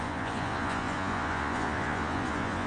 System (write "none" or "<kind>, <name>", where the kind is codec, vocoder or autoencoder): vocoder, Vocos